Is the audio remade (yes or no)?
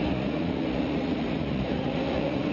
yes